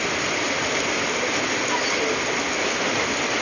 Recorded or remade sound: recorded